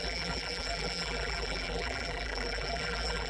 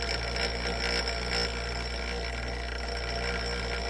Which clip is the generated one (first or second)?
first